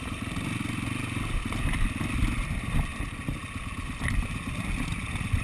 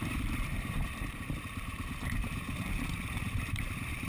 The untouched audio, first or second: first